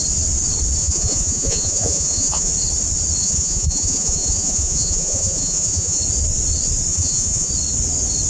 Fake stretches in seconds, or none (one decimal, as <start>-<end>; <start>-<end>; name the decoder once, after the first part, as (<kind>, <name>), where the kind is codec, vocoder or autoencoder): 0.8-2.5 (vocoder, Vocos); 3.2-6.0; 6.9-7.5